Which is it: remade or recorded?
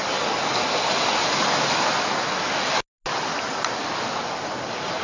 recorded